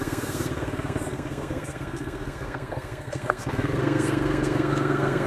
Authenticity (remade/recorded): remade